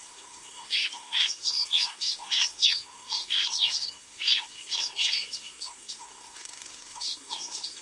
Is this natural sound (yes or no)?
no